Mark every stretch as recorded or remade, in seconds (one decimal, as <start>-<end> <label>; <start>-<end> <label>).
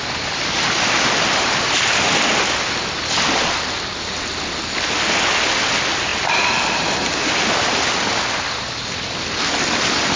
0.0-10.2 recorded